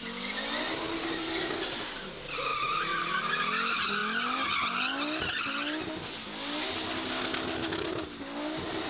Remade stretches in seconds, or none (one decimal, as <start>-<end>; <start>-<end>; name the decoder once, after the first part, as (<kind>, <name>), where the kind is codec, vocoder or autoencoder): 2.5-3.1 (vocoder, BigVGAN v2)

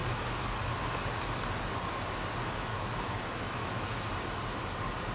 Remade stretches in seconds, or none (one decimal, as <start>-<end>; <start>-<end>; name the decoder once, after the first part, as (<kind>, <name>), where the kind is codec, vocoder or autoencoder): 2.7-4.1 (autoencoder, DAC-VAE)

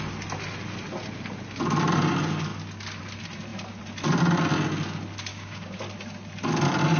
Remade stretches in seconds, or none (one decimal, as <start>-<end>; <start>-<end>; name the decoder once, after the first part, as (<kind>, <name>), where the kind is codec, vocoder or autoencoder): 5.3-5.8 (codec, DAC)

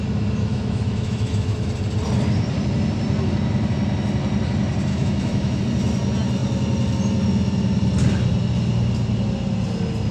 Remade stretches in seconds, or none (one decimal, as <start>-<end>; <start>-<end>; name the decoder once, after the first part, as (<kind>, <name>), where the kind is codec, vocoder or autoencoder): 0.5-1.7 (autoencoder, DAC-VAE); 4.9-5.6

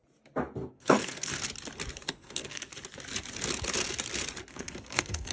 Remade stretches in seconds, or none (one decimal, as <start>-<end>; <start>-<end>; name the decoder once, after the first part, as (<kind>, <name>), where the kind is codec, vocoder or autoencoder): 0.7-1.3 (codec, SNAC); 2.1-2.7; 4.5-5.3

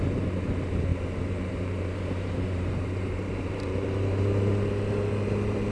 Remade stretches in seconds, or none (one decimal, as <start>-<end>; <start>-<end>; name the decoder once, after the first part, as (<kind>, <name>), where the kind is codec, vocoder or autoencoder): 0.9-4.2 (vocoder, BigVGAN v2)

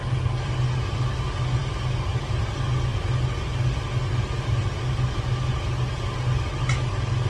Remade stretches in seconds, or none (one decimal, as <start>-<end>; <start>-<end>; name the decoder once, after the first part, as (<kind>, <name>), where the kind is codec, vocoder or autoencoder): none